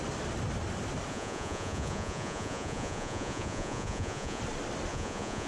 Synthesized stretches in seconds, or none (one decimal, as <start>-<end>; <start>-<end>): 1.1-4.4; 4.9-5.5